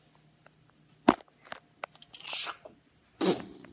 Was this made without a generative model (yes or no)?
yes